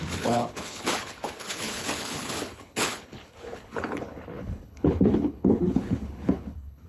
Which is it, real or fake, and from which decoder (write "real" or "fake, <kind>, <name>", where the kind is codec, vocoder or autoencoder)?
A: fake, codec, HILCodec